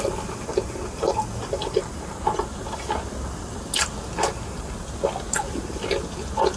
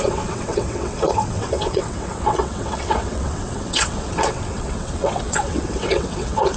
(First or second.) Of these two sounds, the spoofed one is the second